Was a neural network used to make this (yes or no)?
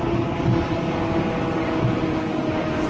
no